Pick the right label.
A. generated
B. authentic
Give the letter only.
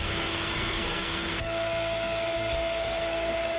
A